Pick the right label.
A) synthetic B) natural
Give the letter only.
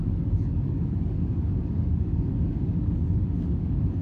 A